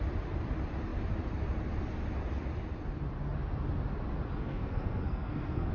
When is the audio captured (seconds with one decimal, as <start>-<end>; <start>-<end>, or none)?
0.0-4.4